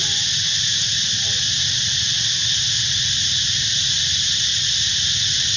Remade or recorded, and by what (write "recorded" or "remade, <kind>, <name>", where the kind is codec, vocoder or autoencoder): recorded